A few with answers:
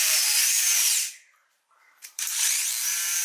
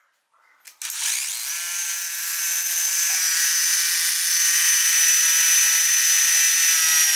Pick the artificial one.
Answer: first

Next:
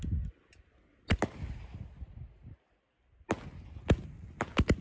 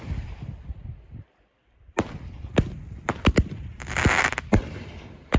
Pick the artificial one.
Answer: second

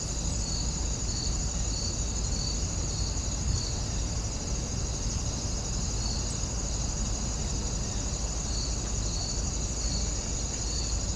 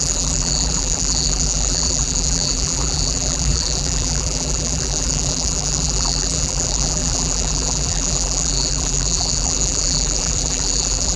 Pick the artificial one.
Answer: second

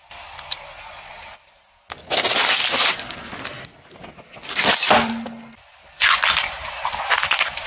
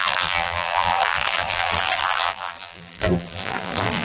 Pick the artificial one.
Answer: second